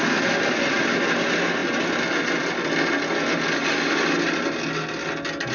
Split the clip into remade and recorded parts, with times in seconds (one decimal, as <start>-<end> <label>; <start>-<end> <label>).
0.0-5.5 recorded